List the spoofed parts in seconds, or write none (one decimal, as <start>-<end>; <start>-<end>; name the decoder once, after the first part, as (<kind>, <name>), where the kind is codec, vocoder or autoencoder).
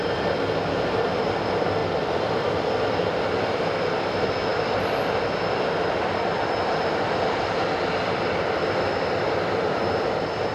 1.8-3.6 (vocoder, BigVGAN v2); 4.5-9.7